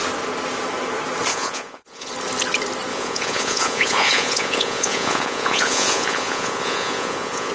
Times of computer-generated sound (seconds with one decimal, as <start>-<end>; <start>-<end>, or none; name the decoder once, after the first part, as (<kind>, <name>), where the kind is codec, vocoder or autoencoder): 1.3-2.1 (vocoder, Vocos); 2.9-7.5